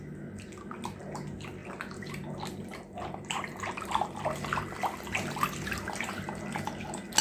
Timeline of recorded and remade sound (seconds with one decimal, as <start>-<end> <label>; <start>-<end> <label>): 0.0-7.2 recorded